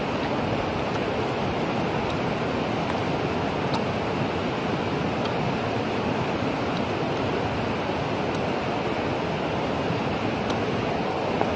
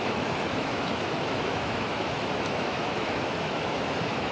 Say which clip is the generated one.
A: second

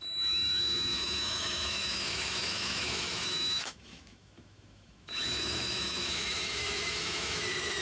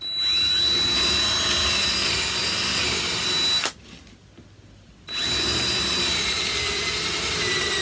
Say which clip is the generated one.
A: first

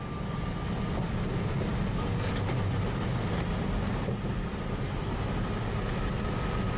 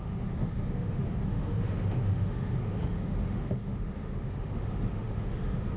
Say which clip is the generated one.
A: second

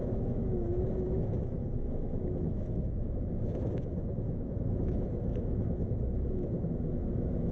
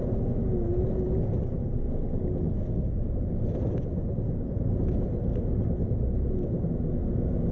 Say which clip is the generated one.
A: first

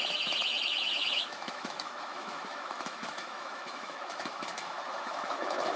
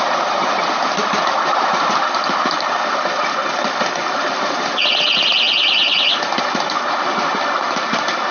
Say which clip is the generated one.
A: first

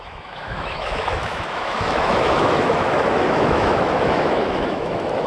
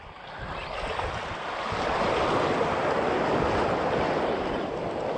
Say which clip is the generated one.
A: first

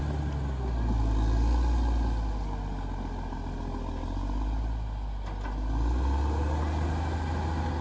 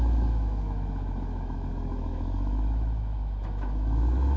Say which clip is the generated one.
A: second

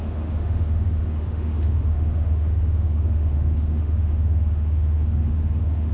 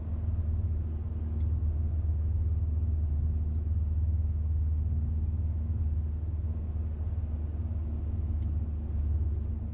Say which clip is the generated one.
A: first